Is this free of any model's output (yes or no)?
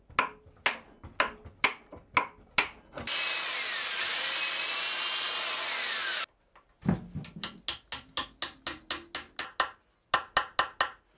yes